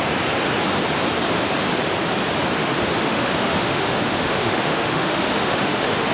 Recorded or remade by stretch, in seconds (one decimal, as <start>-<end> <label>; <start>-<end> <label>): 0.0-2.6 recorded; 2.6-6.1 remade